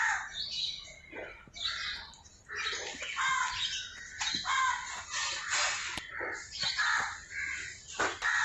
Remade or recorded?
recorded